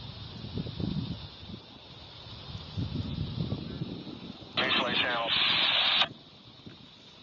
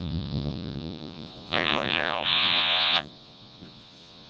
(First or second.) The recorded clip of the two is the first